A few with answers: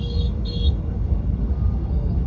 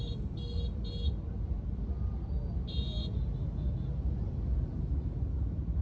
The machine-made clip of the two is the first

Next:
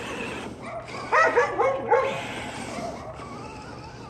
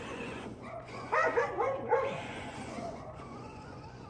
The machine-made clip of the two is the second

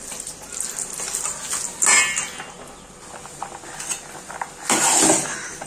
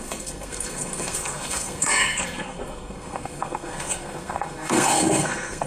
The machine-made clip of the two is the second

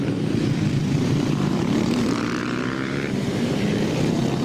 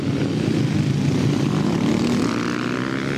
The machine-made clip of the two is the first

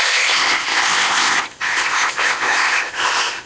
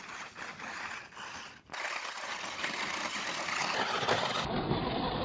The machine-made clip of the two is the first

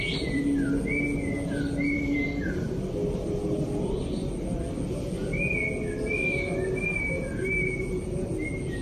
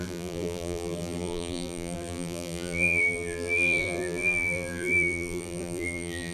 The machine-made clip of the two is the second